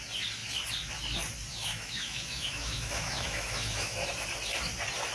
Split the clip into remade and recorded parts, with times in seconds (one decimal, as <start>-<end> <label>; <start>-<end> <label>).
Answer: 0.0-1.5 recorded; 1.5-4.1 remade; 4.1-5.1 recorded